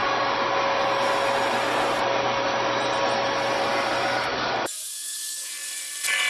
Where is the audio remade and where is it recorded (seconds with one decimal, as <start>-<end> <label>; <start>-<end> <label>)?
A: 0.0-4.3 recorded; 4.3-5.5 remade; 5.5-6.3 recorded